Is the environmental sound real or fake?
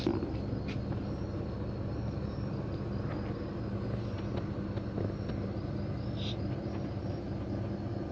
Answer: real